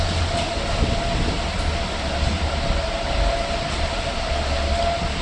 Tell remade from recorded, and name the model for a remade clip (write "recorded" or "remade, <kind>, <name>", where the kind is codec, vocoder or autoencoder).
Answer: recorded